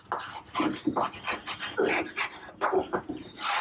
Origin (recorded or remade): recorded